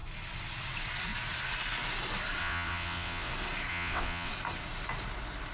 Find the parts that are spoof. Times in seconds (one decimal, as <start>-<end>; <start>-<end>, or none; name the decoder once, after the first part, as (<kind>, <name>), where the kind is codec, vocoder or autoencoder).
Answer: 2.4-3.3 (vocoder, WaveNeXt); 3.7-4.3